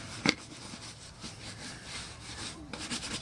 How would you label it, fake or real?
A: fake